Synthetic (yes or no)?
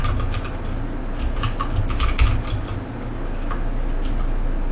no